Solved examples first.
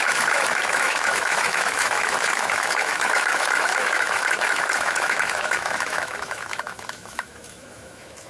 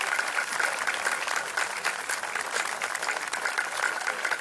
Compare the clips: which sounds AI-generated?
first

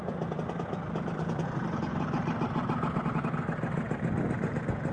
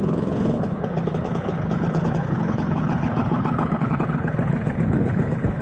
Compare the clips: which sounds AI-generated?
second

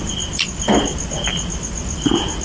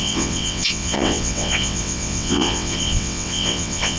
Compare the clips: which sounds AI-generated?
second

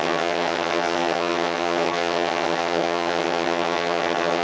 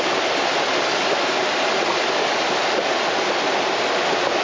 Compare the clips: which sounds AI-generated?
first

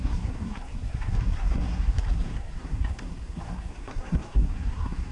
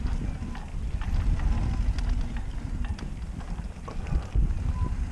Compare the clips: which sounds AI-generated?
first